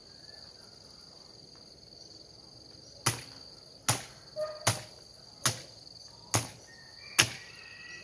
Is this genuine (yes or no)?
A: yes